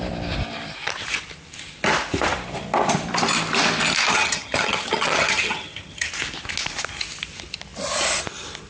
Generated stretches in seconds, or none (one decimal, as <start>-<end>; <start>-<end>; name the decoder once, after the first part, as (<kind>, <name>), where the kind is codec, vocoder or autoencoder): 4.1-6.1 (vocoder, HiFi-GAN)